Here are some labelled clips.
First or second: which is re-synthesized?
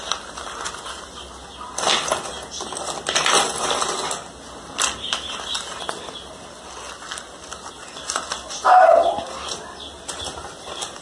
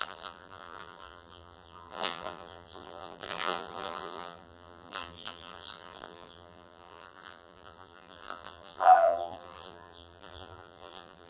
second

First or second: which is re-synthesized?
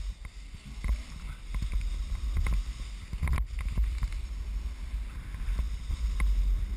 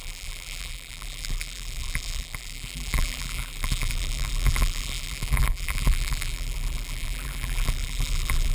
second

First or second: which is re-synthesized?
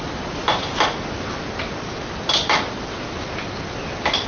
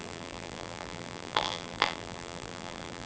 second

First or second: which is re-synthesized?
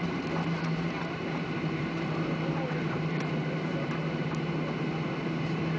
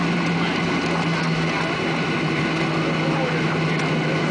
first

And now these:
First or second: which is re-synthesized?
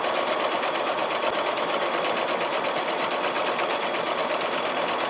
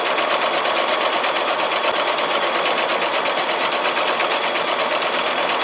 first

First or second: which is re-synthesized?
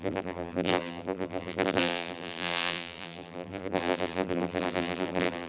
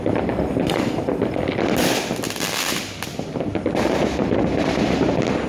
first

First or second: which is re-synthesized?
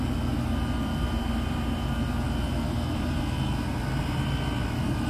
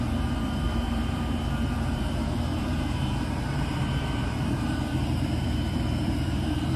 second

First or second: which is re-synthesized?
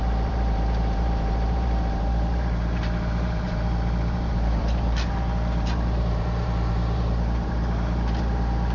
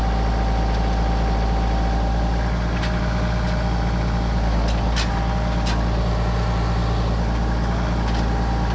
first